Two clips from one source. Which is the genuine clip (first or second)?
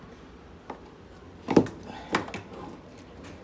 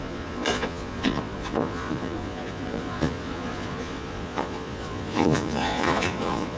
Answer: first